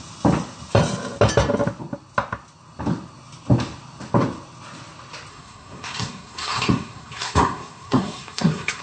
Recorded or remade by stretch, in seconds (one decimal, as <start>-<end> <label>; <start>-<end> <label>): 0.0-5.3 recorded; 5.3-8.8 remade